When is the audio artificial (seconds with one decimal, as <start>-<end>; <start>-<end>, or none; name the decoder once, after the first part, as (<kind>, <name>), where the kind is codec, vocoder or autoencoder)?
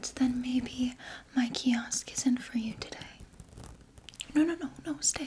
none